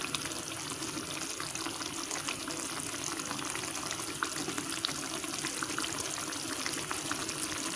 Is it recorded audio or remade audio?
recorded